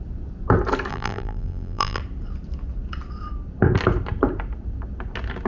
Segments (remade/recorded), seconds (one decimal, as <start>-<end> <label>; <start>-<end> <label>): 0.0-0.9 recorded; 0.9-2.0 remade; 2.0-5.5 recorded